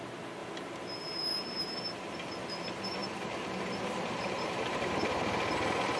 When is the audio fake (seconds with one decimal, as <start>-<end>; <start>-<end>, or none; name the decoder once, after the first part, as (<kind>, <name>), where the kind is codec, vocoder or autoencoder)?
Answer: 0.4-1.8 (vocoder, BigVGAN v2); 3.0-5.1